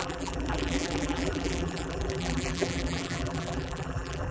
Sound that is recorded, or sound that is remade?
remade